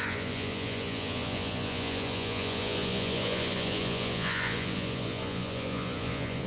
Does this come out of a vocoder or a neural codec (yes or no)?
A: yes